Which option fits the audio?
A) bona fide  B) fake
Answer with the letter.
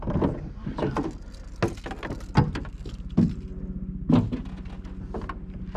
A